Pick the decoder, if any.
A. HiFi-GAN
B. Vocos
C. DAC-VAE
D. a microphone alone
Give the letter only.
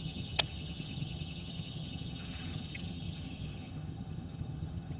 A